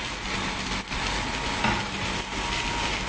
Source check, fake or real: real